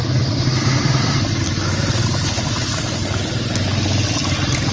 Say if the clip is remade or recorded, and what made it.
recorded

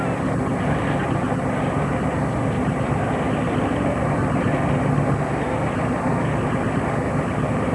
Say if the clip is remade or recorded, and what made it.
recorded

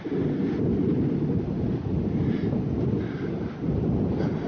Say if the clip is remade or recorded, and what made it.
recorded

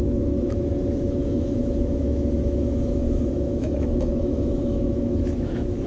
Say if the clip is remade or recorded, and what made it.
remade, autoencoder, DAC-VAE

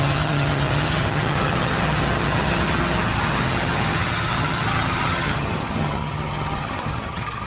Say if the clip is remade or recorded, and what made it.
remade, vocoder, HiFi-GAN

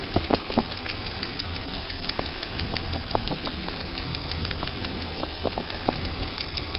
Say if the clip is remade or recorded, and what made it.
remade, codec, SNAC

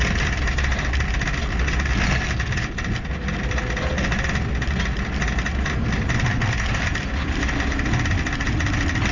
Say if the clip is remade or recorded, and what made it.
recorded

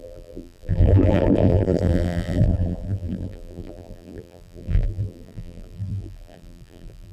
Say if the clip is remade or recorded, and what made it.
remade, vocoder, BigVGAN v2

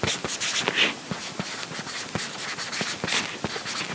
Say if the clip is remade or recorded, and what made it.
recorded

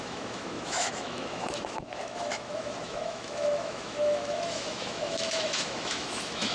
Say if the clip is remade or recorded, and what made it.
remade, autoencoder, DAC-VAE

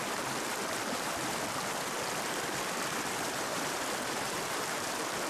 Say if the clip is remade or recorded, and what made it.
recorded